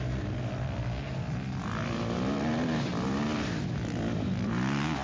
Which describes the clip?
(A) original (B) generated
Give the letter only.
A